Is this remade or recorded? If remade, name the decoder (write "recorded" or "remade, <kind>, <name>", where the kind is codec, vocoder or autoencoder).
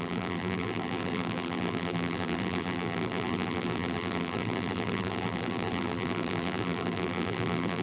remade, vocoder, BigVGAN v2